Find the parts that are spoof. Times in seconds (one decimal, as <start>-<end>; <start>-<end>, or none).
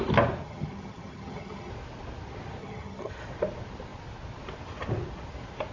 0.4-1.7; 2.6-3.1